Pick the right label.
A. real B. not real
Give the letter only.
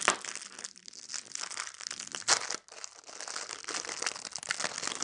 A